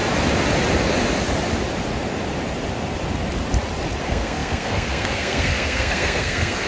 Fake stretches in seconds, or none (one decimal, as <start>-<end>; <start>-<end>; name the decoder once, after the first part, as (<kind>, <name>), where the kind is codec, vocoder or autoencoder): 4.0-6.7 (codec, SNAC)